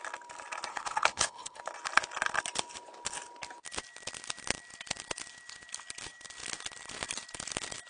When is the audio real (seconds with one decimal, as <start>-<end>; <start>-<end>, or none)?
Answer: 0.0-0.7; 1.6-7.9